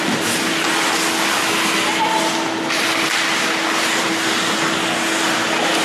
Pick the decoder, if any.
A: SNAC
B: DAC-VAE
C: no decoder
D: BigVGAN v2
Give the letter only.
C